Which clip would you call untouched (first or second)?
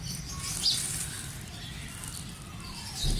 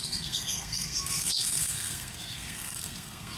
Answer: first